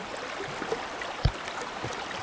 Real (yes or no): yes